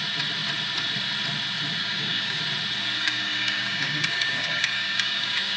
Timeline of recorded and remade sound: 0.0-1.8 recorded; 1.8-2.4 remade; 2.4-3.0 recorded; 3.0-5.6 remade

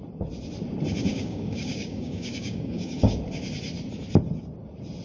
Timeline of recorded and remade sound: 0.0-1.1 recorded; 1.1-3.2 remade; 3.2-5.0 recorded

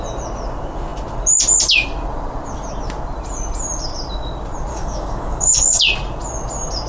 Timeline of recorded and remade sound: 0.0-4.7 recorded; 4.7-5.8 remade; 5.8-6.9 recorded

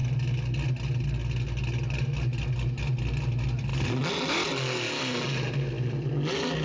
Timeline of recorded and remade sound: 0.0-6.6 recorded

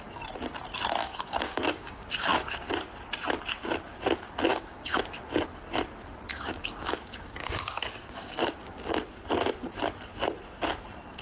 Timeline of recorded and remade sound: 0.0-1.0 recorded; 1.0-2.7 remade; 2.7-4.5 recorded; 4.5-5.0 remade; 5.0-6.3 recorded; 6.3-8.9 remade; 8.9-11.2 recorded

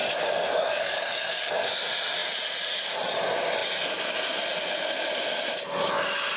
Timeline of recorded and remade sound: 0.0-1.5 remade; 1.5-6.4 recorded

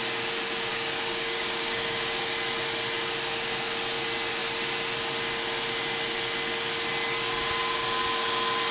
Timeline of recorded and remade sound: 0.0-0.7 recorded; 0.7-2.2 remade; 2.2-8.7 recorded